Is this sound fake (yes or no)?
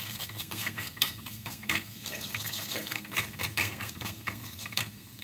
yes